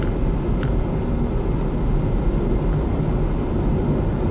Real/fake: real